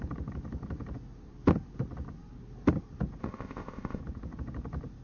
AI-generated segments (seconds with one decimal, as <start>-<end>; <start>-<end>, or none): 3.2-4.0